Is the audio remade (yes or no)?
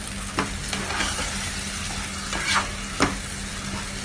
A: no